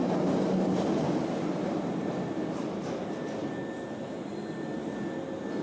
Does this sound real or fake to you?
real